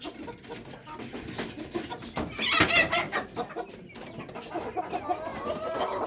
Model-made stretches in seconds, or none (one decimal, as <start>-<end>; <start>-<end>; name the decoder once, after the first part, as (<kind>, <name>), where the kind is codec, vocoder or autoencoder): none